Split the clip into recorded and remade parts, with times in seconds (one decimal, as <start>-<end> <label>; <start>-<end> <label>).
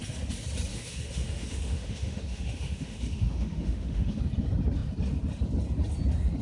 0.0-0.7 recorded; 0.7-4.2 remade; 4.2-6.4 recorded